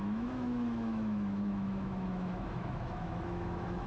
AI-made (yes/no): yes